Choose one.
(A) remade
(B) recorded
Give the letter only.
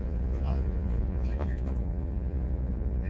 A